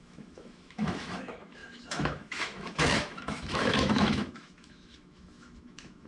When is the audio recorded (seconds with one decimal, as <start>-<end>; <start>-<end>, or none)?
none